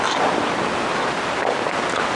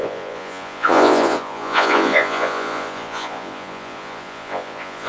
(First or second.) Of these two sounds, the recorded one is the first